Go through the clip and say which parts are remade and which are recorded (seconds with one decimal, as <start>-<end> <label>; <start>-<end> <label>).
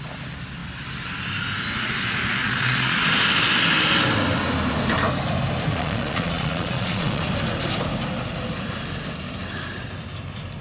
0.0-2.4 recorded; 2.4-3.1 remade; 3.1-5.7 recorded; 5.7-7.2 remade; 7.2-10.6 recorded